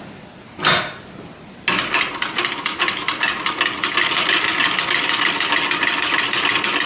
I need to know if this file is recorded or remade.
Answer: recorded